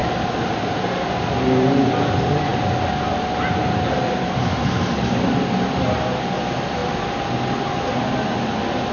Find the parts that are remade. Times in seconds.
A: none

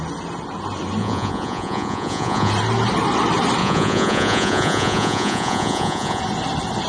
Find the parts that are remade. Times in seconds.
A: 1.0-2.5 (vocoder, Vocos); 3.6-6.2

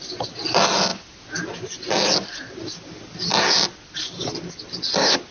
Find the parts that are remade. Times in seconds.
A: none

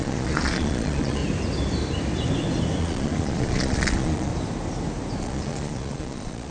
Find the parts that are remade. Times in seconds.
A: 0.0-1.2 (vocoder, Vocos); 2.8-4.3; 5.2-6.5

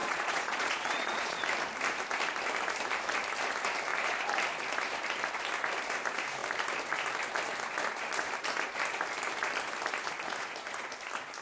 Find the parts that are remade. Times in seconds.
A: 0.0-1.4 (vocoder, Vocos)

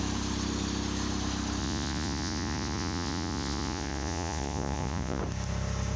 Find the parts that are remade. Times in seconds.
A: 1.6-5.2 (vocoder, Vocos)